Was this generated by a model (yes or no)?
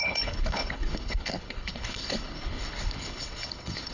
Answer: yes